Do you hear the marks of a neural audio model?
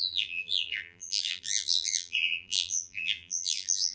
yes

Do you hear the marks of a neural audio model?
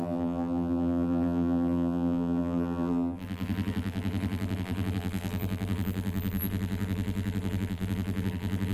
yes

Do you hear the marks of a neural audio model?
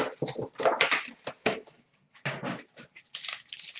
yes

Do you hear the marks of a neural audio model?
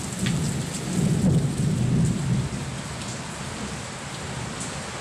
no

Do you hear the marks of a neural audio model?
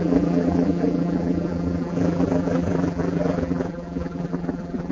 yes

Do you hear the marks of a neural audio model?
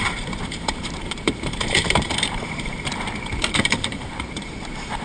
yes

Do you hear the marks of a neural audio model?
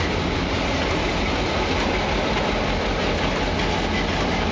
no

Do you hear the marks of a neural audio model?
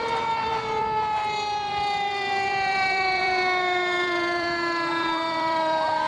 yes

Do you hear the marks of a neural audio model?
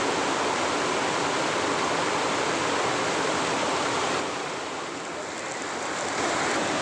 no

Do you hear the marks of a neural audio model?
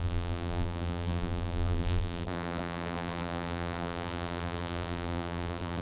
yes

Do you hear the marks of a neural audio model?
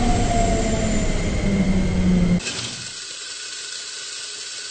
no